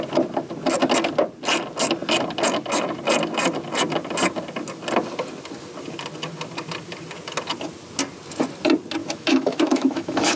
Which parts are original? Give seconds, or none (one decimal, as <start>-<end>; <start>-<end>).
0.0-9.0